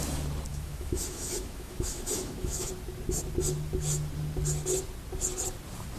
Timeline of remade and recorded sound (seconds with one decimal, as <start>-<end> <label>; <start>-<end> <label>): 0.0-0.5 recorded; 0.5-2.7 remade; 2.7-6.0 recorded